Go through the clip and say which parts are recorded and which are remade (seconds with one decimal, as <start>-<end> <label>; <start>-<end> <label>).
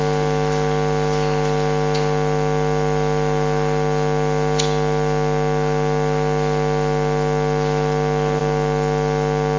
0.0-9.6 recorded